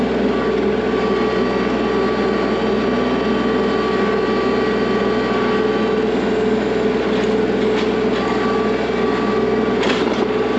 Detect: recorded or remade recorded